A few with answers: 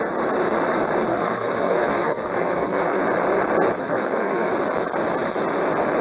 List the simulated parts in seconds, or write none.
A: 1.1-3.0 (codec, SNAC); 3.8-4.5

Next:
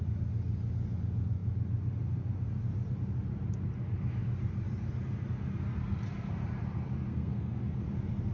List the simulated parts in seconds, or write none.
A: 7.1-7.6 (codec, SNAC)

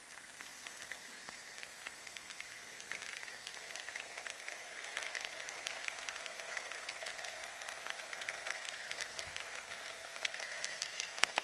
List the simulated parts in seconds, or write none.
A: 0.0-11.4 (codec, SNAC)

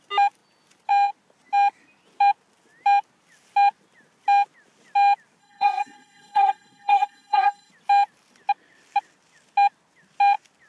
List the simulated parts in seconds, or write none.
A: 5.4-7.7 (codec, SNAC)

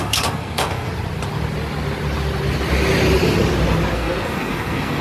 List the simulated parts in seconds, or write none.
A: 0.0-0.9 (codec, SNAC); 3.9-5.0

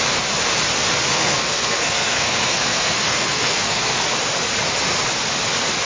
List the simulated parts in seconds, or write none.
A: 1.1-4.0 (codec, SNAC)

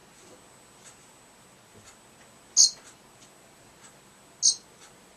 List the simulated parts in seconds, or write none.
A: none